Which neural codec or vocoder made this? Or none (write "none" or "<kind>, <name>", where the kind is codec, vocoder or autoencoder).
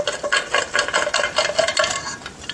none